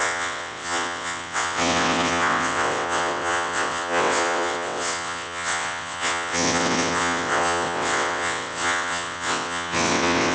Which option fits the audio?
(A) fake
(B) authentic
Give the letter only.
A